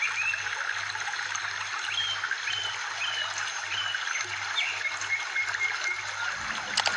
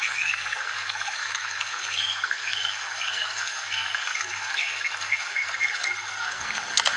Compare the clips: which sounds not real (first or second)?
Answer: second